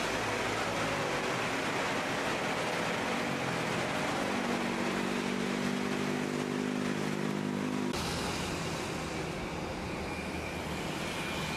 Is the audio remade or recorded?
recorded